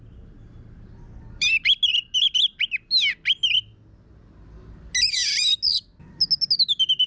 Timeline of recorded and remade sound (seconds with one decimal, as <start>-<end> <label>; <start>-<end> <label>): 0.0-7.1 recorded